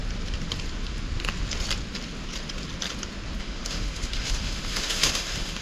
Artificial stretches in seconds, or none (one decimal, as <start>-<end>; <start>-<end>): 3.4-5.6